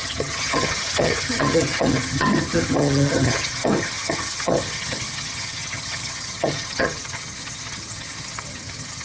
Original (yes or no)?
no